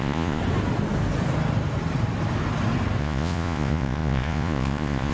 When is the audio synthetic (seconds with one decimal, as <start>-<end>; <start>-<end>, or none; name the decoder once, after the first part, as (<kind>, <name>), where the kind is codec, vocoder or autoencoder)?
0.0-0.4 (vocoder, Vocos); 3.0-5.1